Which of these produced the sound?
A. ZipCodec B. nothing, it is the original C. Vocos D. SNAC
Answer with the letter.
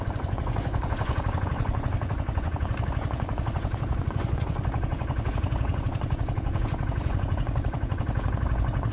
C